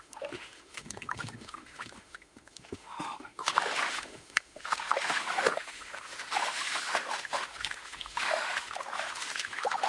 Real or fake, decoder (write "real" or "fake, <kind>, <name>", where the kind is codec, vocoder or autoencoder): fake, autoencoder, DAC-VAE